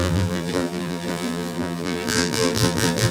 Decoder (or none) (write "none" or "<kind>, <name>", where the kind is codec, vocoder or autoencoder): vocoder, BigVGAN v2